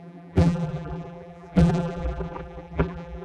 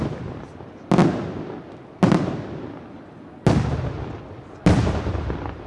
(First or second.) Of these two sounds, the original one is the second